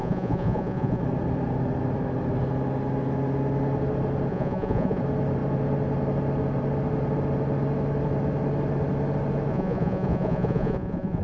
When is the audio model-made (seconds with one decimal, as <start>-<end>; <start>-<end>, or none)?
0.0-1.0; 4.3-5.0; 9.5-11.2